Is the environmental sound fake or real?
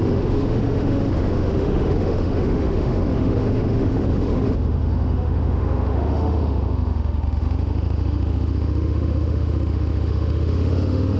fake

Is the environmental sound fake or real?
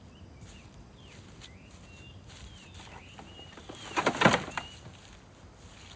real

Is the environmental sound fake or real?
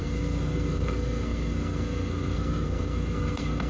fake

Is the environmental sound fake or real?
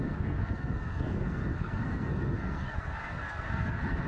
fake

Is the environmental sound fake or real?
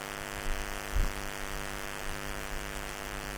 real